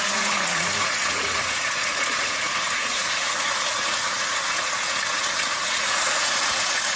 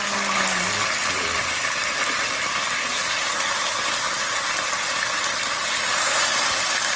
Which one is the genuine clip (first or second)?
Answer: second